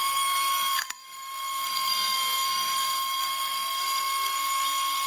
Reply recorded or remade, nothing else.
remade